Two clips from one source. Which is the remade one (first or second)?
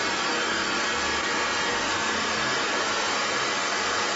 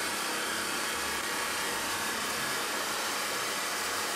second